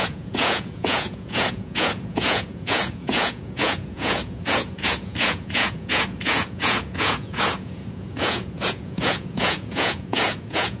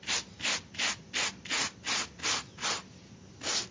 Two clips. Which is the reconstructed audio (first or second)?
first